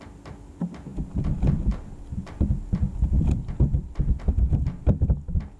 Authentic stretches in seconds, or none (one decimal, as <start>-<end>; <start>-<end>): 0.0-5.6